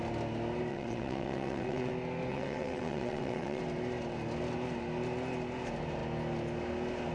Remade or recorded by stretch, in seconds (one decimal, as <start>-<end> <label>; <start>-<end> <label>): 0.0-0.7 recorded; 0.7-1.9 remade; 1.9-2.3 recorded; 2.3-3.6 remade; 3.6-7.1 recorded